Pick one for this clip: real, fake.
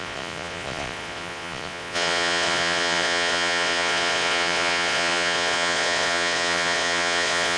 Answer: fake